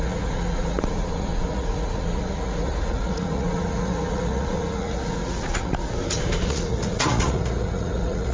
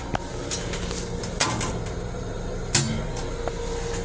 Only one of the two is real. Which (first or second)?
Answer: second